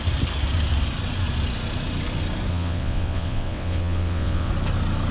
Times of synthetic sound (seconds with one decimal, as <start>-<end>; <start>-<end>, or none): 2.5-4.5